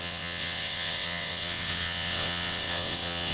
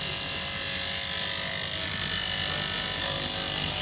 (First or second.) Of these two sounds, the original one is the second